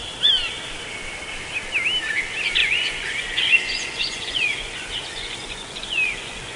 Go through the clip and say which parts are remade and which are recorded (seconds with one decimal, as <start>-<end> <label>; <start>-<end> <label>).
0.0-2.6 recorded; 2.6-6.6 remade